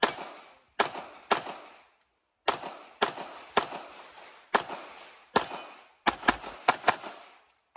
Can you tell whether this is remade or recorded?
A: recorded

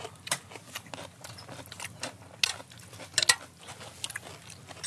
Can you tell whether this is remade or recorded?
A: recorded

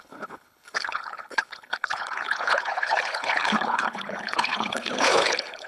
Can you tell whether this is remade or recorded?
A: remade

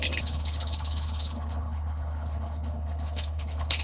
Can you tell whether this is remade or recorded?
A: remade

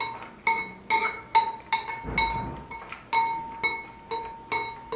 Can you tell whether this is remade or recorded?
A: recorded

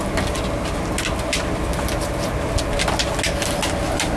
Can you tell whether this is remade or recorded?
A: recorded